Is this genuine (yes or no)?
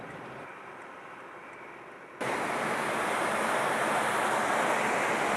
yes